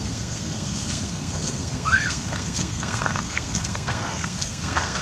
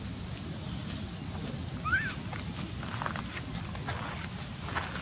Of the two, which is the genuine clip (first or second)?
second